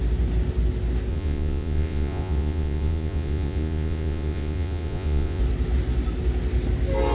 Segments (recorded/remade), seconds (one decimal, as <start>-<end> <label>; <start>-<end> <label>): 0.0-1.1 recorded; 1.1-5.4 remade; 5.4-7.1 recorded